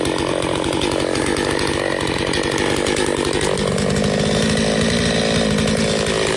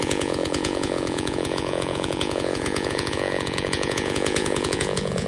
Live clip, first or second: first